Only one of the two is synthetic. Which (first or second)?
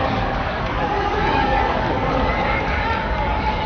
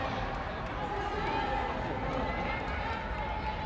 first